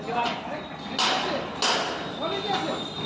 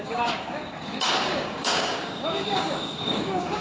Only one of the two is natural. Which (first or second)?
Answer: first